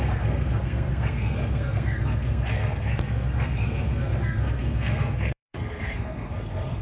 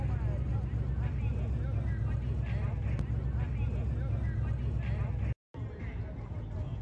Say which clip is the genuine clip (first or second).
second